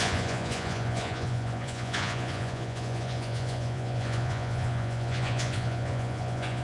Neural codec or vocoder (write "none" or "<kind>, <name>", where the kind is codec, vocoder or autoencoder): vocoder, Vocos